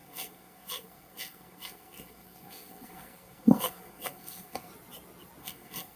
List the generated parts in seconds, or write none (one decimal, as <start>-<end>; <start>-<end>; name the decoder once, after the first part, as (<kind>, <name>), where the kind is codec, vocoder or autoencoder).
0.0-4.7 (codec, SNAC); 5.4-6.0